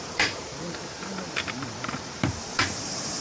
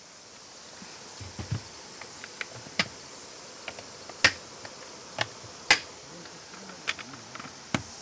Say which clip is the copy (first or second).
first